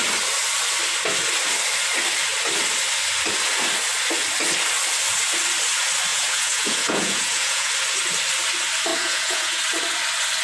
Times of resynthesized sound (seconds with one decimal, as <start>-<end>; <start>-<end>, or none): 6.1-7.7; 8.9-9.6